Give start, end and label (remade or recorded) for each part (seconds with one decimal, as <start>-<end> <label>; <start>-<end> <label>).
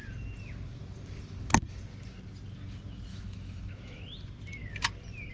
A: 0.0-3.1 recorded; 3.1-4.0 remade; 4.0-5.3 recorded